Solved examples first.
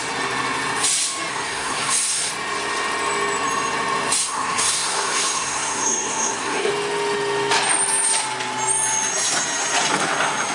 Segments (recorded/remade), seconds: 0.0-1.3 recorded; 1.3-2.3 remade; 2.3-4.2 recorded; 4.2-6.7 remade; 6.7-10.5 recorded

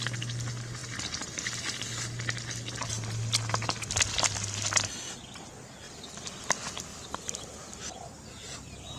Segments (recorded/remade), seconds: 0.0-9.0 recorded

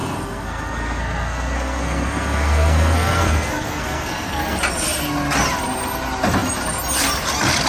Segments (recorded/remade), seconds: 0.0-4.6 remade; 4.6-7.7 recorded

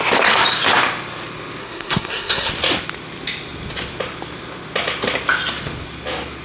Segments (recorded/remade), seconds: 0.0-1.6 recorded; 1.6-2.5 remade; 2.5-6.4 recorded

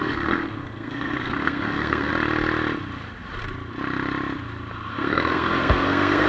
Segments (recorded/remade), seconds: 0.0-2.1 remade; 2.1-4.9 recorded; 4.9-6.3 remade